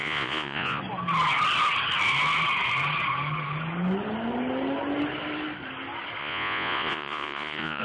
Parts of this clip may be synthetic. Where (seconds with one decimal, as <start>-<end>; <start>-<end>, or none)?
0.0-0.8; 6.2-7.8